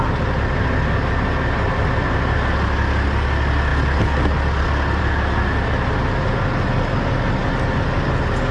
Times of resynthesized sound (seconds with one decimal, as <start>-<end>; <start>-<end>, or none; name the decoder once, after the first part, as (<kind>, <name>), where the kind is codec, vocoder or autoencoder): none